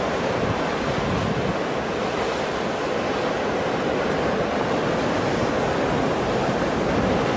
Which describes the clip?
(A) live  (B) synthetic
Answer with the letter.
A